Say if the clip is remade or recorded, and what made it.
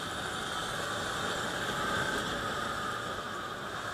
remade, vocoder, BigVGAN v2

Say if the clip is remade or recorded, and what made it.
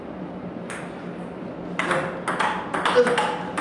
recorded